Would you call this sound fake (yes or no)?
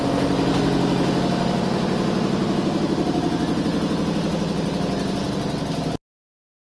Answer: no